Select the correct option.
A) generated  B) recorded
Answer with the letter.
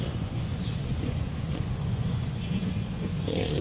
A